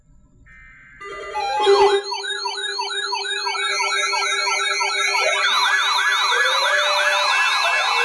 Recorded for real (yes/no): yes